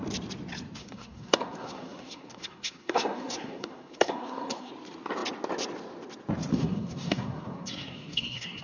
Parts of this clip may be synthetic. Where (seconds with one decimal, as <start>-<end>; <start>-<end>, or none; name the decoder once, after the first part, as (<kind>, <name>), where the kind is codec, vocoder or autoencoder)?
0.8-4.7 (codec, SNAC); 6.5-8.6